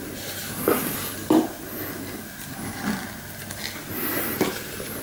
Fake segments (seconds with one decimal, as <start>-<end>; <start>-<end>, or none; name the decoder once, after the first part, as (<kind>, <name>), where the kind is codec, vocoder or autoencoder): 4.1-5.0 (vocoder, BigVGAN v2)